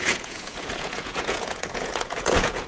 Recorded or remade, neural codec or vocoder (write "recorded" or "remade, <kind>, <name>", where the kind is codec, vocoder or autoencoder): remade, vocoder, Vocos